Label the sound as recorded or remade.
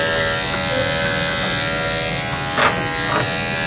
recorded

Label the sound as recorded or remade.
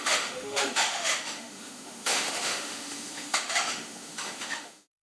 remade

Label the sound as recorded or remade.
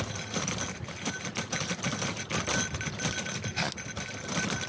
recorded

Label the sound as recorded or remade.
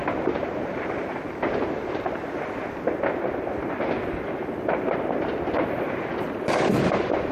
recorded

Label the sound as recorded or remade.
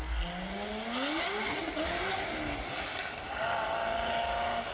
recorded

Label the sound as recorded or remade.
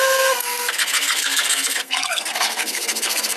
remade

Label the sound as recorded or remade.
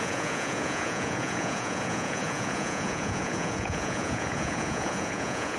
remade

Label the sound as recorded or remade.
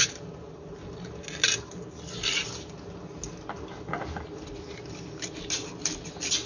recorded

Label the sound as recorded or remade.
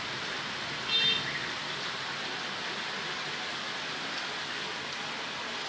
recorded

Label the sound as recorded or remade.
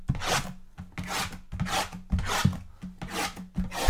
recorded